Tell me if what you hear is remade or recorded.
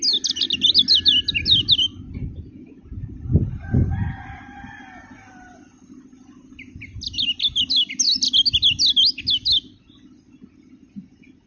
recorded